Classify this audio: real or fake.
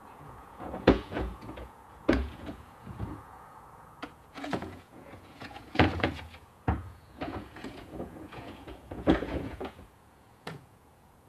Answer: fake